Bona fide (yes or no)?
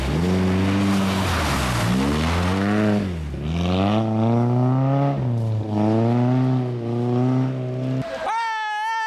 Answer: yes